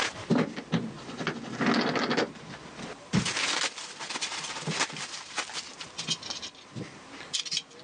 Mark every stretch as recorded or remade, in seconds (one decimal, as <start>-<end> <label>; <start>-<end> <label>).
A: 0.0-7.8 recorded